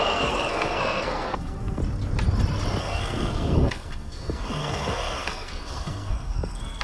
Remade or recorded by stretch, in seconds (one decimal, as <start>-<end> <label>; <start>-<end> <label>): 0.0-1.8 remade; 1.8-2.8 recorded; 2.8-6.8 remade